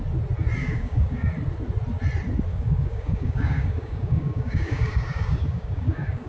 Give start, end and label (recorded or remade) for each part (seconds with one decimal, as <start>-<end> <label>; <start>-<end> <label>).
0.0-0.6 recorded; 0.6-1.3 remade; 1.3-2.5 recorded; 2.5-6.3 remade